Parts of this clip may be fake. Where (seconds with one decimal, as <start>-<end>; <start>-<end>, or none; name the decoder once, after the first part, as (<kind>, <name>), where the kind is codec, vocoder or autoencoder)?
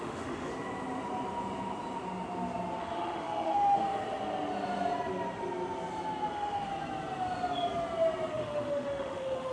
0.0-0.5 (autoencoder, DAC-VAE); 2.8-3.8; 6.3-6.7; 8.3-9.5